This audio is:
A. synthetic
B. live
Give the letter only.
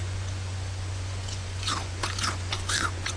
A